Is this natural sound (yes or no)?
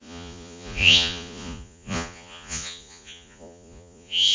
no